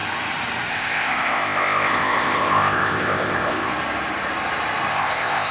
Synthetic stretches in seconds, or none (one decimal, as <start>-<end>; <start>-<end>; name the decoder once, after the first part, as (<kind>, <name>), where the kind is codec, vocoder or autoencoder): 0.7-3.7 (codec, ZipCodec); 4.9-5.5